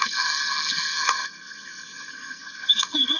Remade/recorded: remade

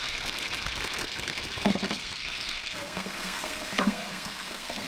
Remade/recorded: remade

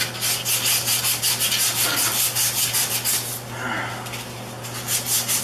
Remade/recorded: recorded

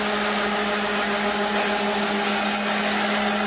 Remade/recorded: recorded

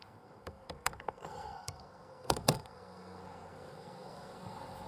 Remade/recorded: remade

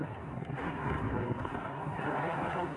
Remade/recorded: remade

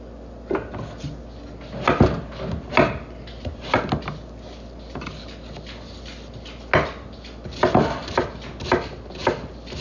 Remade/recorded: recorded